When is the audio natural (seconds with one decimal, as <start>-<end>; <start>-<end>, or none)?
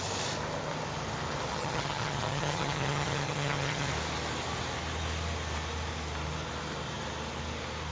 0.0-1.5; 3.9-7.9